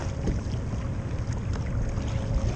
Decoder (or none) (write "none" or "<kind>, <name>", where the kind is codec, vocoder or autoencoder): none